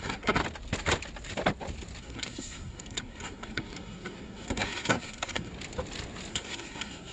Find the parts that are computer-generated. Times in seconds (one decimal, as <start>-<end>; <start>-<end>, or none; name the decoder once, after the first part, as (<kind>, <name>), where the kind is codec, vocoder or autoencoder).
0.0-0.4 (codec, SNAC); 2.0-5.5; 6.3-7.1